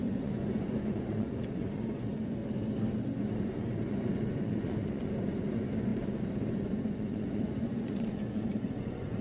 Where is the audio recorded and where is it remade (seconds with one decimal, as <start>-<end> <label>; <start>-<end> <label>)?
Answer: 0.0-2.4 remade; 2.4-3.2 recorded; 3.2-9.2 remade